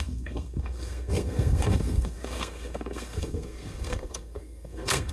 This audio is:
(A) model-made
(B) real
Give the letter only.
A